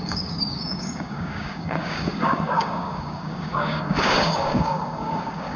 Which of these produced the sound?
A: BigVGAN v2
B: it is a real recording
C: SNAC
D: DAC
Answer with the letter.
D